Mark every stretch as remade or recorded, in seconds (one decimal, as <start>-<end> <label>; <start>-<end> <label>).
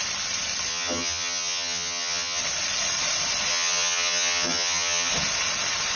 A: 0.0-0.7 recorded; 0.7-2.4 remade; 2.4-3.5 recorded; 3.5-5.1 remade; 5.1-6.0 recorded